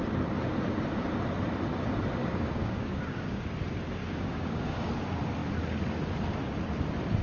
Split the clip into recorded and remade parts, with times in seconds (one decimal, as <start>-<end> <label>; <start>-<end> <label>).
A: 0.0-2.2 recorded; 2.2-3.4 remade; 3.4-4.0 recorded; 4.0-4.9 remade; 4.9-7.2 recorded